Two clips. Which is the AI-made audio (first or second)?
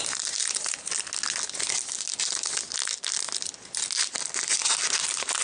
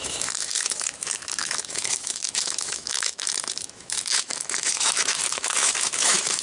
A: second